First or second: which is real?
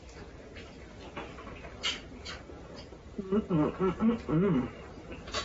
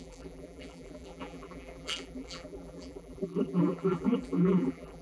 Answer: first